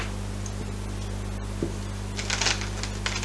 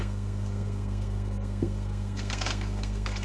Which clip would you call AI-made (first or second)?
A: second